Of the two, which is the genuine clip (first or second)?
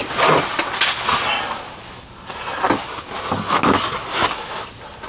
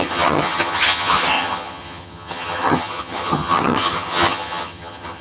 first